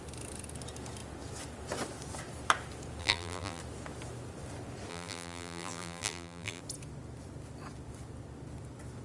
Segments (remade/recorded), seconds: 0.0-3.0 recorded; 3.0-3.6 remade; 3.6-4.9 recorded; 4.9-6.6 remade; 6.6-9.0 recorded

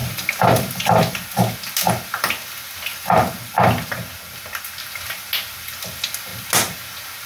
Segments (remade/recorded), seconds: 0.0-1.4 remade; 1.4-2.9 recorded; 2.9-3.9 remade; 3.9-7.3 recorded